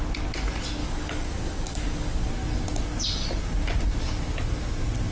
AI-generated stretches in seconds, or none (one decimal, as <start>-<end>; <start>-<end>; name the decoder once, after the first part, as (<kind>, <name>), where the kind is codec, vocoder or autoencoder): 0.8-2.3 (codec, DAC)